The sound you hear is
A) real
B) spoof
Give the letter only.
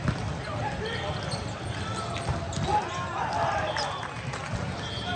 A